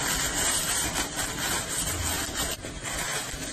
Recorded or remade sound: recorded